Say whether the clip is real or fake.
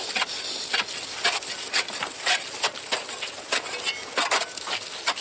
real